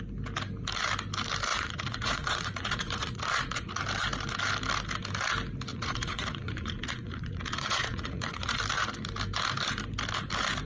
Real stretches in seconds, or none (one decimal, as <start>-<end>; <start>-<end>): 0.0-1.5; 3.8-5.7; 8.6-10.6